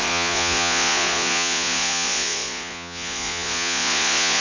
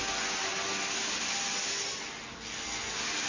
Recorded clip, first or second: second